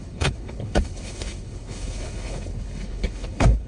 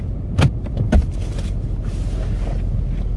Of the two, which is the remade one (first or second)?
first